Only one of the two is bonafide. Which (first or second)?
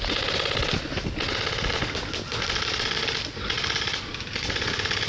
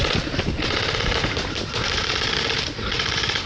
first